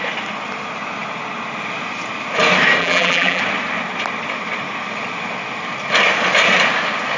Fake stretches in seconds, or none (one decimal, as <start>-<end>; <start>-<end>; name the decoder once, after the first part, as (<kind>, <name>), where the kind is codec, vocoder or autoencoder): 2.8-3.4 (vocoder, BigVGAN v2)